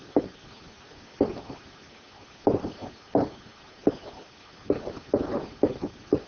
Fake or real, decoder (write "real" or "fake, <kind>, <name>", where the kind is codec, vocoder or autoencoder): real